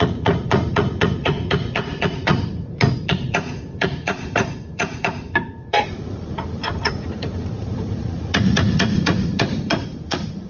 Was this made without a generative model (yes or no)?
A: no